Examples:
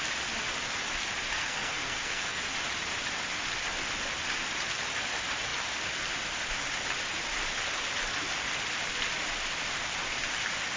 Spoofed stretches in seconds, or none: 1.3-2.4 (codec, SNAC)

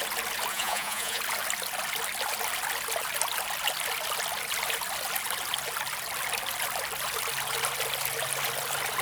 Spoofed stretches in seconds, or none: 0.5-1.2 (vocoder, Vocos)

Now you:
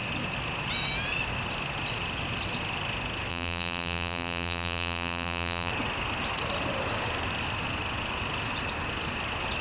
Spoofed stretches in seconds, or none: 3.3-5.7 (vocoder, BigVGAN v2)

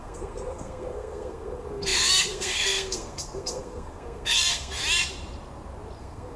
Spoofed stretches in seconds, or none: 0.0-4.8 (codec, SNAC); 6.0-6.4